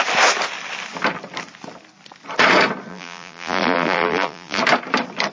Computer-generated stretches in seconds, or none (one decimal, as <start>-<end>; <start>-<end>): 2.9-4.6